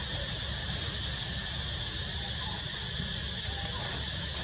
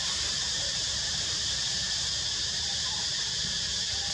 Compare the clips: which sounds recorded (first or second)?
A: first